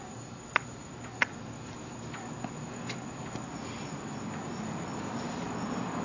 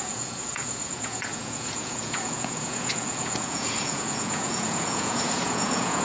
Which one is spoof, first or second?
second